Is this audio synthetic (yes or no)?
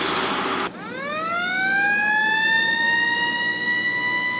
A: no